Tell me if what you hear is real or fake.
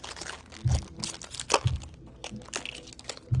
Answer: real